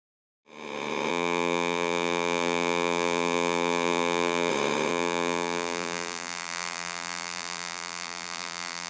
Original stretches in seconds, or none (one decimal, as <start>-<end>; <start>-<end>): 0.0-1.1; 4.5-4.9